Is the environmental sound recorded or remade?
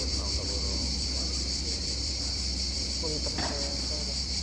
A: remade